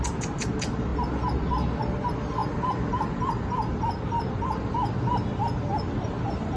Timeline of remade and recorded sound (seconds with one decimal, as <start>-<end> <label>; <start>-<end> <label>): 0.0-6.6 recorded